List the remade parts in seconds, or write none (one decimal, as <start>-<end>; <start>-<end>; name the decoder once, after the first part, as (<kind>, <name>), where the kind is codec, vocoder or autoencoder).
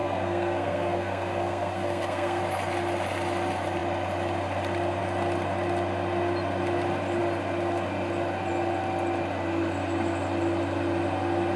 0.0-2.4 (codec, SNAC)